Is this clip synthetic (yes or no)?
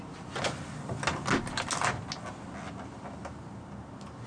no